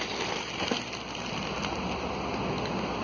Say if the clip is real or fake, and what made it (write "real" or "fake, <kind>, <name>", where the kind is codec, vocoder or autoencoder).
real